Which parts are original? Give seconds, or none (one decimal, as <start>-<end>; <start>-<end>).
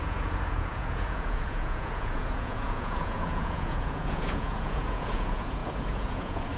none